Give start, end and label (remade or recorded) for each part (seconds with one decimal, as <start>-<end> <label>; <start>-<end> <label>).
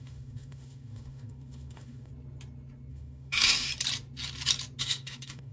0.0-2.1 remade; 2.1-2.9 recorded; 2.9-3.7 remade; 3.7-4.8 recorded; 4.8-5.5 remade